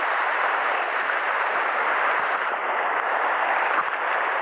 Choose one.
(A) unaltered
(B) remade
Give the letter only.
B